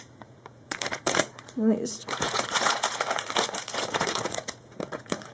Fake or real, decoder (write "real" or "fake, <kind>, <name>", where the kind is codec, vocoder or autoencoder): fake, vocoder, Vocos